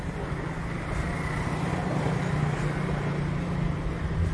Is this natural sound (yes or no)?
yes